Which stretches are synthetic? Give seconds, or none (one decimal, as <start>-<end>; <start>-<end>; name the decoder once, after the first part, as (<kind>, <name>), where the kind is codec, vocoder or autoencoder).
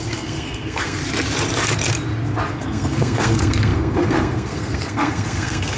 0.0-1.0 (codec, SNAC); 2.5-5.8